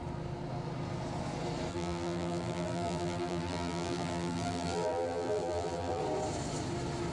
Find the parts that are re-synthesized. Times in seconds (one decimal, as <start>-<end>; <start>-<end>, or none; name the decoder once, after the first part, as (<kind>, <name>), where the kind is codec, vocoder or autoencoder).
1.7-6.0 (vocoder, BigVGAN v2)